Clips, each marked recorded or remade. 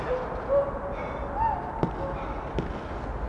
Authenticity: recorded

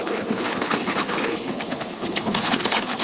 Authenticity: remade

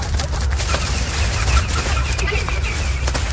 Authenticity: recorded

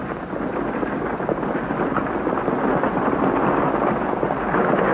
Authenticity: recorded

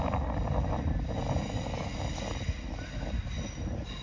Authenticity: recorded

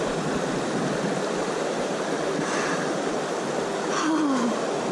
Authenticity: recorded